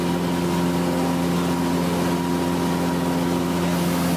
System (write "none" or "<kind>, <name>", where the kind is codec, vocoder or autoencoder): none